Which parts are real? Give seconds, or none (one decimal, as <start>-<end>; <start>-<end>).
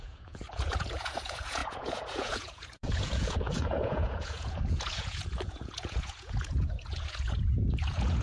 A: none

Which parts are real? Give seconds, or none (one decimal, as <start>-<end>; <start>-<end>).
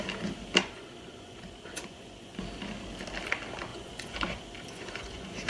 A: 0.0-0.6; 2.4-3.7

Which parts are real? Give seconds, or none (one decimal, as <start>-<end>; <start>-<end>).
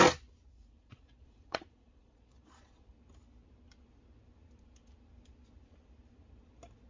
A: 0.0-0.5; 2.9-6.9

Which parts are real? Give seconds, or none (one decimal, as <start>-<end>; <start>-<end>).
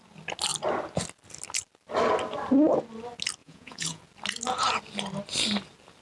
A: 0.0-3.4; 4.0-6.0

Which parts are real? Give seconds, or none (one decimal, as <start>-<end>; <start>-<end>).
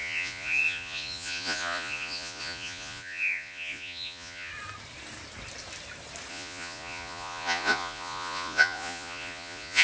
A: 4.5-6.3